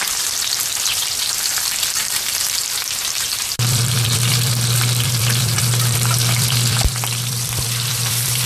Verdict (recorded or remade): remade